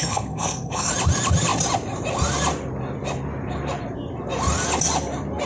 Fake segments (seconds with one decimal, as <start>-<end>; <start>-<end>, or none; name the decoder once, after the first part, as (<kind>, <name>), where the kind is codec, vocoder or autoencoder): 0.0-0.9 (codec, SNAC)